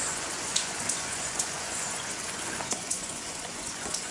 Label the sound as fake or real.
fake